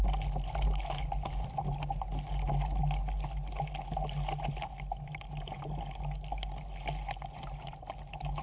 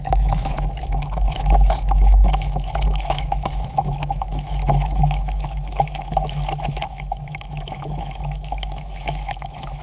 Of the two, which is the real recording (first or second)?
first